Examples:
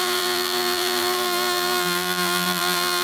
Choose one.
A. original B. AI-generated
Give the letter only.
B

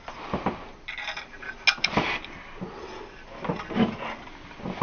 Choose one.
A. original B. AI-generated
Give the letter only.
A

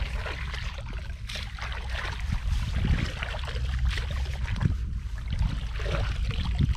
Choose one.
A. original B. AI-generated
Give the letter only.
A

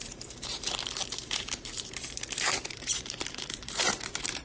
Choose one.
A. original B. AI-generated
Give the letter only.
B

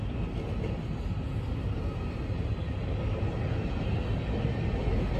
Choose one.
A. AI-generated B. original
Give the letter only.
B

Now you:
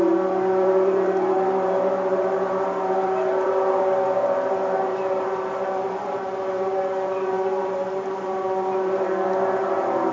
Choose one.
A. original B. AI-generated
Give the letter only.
B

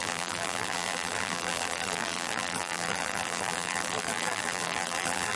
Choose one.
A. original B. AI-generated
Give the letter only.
B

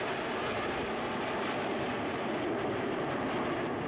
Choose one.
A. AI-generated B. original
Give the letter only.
B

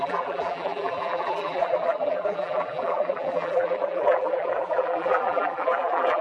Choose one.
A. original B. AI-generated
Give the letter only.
B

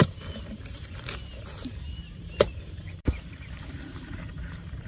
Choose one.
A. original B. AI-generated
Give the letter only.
B